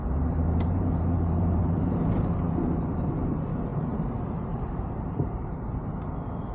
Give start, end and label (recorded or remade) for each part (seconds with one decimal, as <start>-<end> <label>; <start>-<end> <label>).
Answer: 0.0-2.4 remade; 2.4-3.7 recorded; 3.7-5.9 remade; 5.9-6.5 recorded

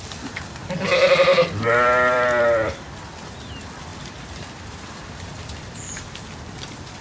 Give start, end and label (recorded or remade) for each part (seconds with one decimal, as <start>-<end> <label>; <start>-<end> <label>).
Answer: 0.0-1.3 recorded; 1.3-2.7 remade; 2.7-3.9 recorded; 3.9-6.2 remade; 6.2-7.0 recorded

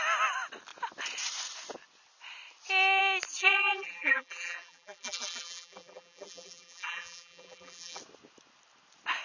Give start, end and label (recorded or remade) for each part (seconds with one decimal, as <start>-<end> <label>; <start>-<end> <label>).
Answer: 0.0-3.4 recorded; 3.4-8.0 remade; 8.0-9.2 recorded

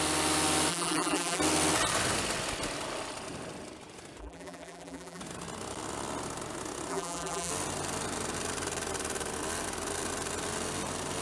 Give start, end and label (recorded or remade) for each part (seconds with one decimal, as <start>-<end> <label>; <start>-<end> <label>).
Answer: 0.0-0.7 recorded; 0.7-1.4 remade; 1.4-4.2 recorded; 4.2-5.2 remade; 5.2-6.9 recorded; 6.9-7.5 remade; 7.5-11.2 recorded